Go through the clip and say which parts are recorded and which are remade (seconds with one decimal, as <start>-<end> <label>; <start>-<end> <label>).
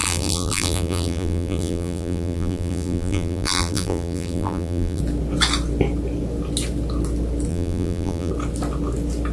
0.0-5.0 remade; 5.0-7.5 recorded; 7.5-8.3 remade; 8.3-9.3 recorded